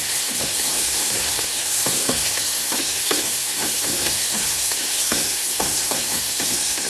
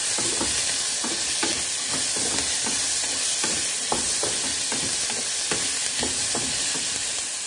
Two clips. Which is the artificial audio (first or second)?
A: first